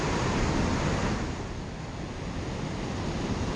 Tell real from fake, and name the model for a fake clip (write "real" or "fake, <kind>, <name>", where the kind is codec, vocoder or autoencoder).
real